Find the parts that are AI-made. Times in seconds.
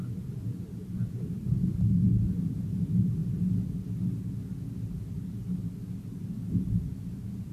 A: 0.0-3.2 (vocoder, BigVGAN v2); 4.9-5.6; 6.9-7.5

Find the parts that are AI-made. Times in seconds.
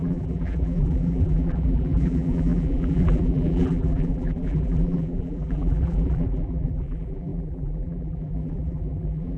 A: 0.0-9.4 (vocoder, BigVGAN v2)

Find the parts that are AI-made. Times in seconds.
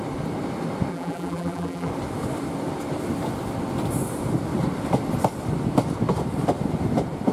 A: 0.9-1.9 (vocoder, BigVGAN v2)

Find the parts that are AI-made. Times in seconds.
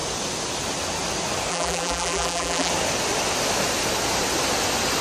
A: 1.5-2.7 (vocoder, BigVGAN v2)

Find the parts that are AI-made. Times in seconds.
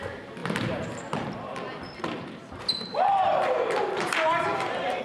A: none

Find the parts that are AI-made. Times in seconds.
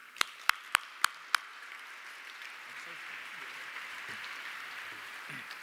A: 0.0-0.6 (vocoder, BigVGAN v2); 1.5-4.7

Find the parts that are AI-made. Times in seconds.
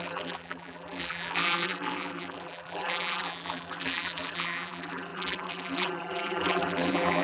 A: 0.0-7.2 (vocoder, BigVGAN v2)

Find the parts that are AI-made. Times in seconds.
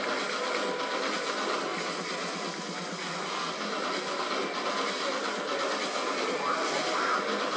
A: none